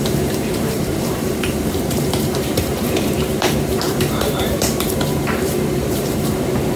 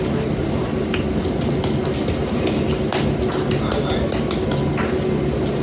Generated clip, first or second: first